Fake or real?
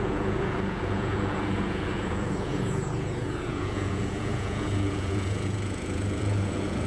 fake